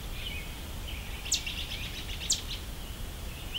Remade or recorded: recorded